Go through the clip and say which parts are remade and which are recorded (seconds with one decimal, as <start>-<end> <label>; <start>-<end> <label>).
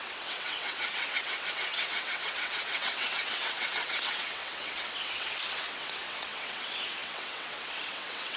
0.0-8.4 remade